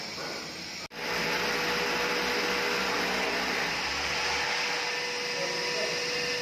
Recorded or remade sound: recorded